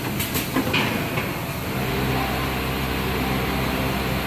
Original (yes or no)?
yes